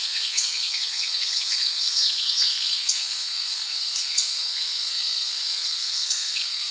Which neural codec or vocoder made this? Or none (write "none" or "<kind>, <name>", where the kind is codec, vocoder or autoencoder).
codec, SNAC